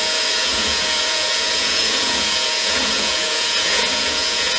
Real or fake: fake